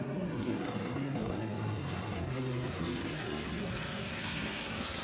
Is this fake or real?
fake